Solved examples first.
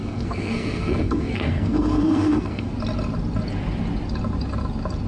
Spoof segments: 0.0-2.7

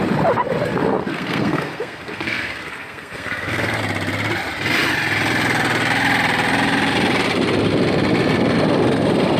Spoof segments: 0.8-3.8

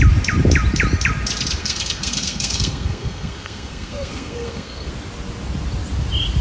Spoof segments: 1.6-4.9

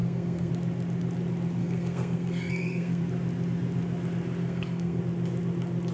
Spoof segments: 0.0-0.5; 1.6-3.0; 4.4-5.0

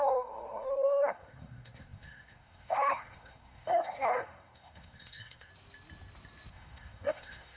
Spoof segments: 0.0-5.5; 6.5-7.6